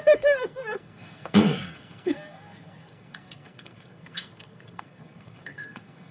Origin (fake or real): fake